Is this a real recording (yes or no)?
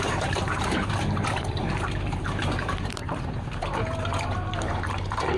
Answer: no